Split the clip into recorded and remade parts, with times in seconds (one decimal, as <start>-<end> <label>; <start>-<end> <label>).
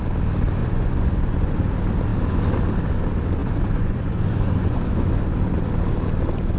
0.0-0.6 recorded; 0.6-1.6 remade; 1.6-3.4 recorded; 3.4-5.1 remade; 5.1-6.6 recorded